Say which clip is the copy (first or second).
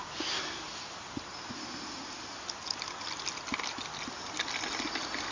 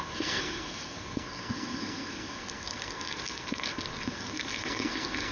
second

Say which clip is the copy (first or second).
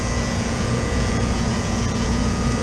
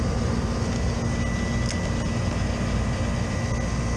first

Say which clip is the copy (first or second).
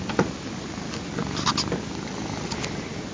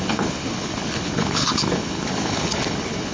second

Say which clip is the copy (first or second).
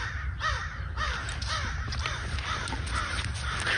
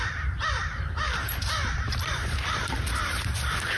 second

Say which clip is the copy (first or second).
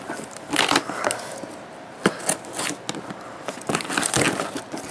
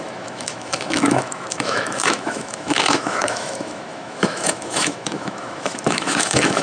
second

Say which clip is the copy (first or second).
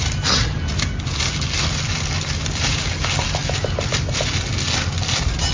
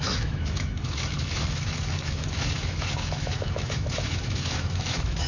second